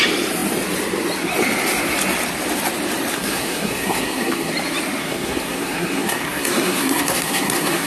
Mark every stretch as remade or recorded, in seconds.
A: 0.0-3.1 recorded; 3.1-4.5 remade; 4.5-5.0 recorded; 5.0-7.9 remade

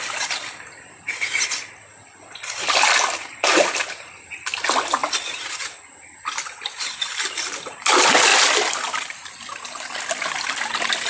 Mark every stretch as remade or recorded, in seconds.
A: 0.0-11.1 recorded

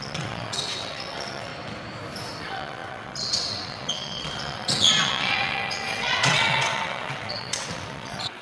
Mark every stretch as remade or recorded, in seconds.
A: 0.0-1.5 remade; 1.5-2.4 recorded; 2.4-8.4 remade

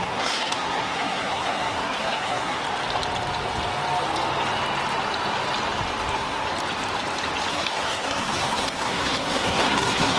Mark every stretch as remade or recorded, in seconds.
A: 0.0-2.6 remade; 2.6-6.1 recorded; 6.1-6.5 remade; 6.5-7.5 recorded; 7.5-10.2 remade

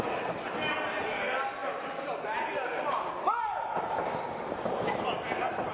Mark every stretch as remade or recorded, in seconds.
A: 0.0-5.7 recorded

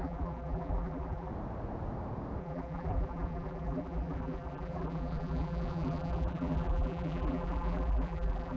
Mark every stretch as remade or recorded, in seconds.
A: 0.0-1.3 remade; 1.3-2.4 recorded; 2.4-8.6 remade

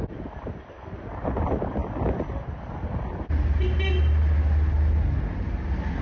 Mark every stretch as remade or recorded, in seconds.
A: 0.0-6.0 recorded

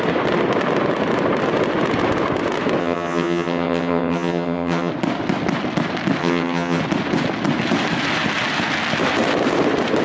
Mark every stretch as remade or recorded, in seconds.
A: 0.0-2.8 recorded; 2.8-4.9 remade; 4.9-6.2 recorded; 6.2-6.8 remade; 6.8-10.0 recorded